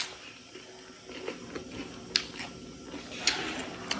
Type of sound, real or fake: real